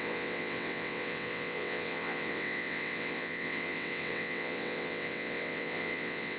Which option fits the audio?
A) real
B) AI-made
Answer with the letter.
B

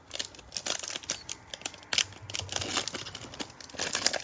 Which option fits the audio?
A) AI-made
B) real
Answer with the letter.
B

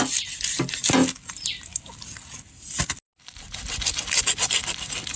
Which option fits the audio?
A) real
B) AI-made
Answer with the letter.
A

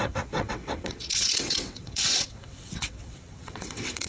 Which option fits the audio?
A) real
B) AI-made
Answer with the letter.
B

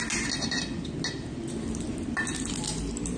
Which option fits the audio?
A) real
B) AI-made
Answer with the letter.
A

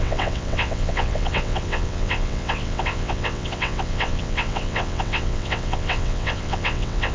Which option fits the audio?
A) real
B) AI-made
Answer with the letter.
B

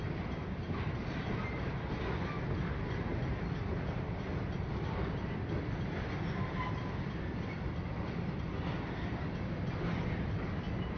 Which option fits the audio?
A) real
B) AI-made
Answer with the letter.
A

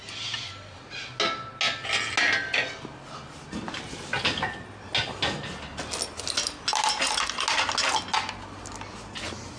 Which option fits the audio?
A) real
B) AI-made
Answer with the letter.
A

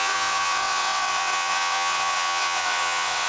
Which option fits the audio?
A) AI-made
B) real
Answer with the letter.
A